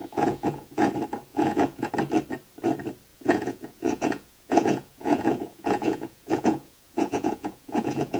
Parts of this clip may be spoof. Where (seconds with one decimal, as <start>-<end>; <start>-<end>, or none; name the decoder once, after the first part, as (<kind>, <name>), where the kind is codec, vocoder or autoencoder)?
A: 0.0-0.9 (vocoder, Vocos); 1.3-1.9; 3.1-8.2